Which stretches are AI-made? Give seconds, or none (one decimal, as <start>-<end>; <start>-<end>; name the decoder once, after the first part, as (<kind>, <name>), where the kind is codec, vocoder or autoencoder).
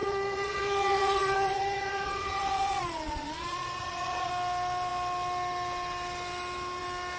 0.0-4.3 (vocoder, Vocos)